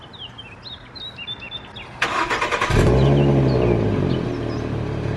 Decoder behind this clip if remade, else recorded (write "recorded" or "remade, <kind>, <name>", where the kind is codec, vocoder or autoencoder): recorded